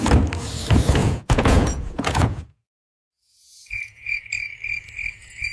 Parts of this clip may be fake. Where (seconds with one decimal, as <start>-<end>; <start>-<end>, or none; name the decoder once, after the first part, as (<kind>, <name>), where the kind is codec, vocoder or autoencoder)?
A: 1.0-4.3 (vocoder, Vocos)